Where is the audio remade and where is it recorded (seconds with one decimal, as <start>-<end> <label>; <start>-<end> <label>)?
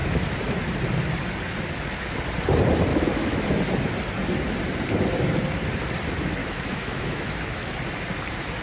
0.0-2.9 recorded; 2.9-3.5 remade; 3.5-6.4 recorded; 6.4-7.7 remade; 7.7-8.6 recorded